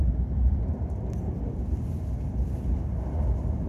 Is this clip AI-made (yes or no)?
no